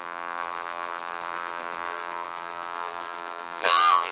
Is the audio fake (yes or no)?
yes